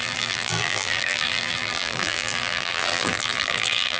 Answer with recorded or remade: remade